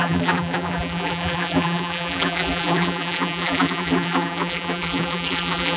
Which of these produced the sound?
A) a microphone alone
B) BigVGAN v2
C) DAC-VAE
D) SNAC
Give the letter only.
B